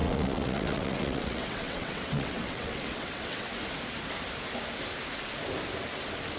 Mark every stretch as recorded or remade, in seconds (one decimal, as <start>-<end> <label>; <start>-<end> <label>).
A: 0.0-3.5 remade; 3.5-6.4 recorded